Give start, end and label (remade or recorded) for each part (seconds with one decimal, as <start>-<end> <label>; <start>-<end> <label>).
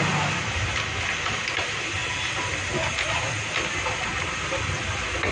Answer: 0.0-5.3 recorded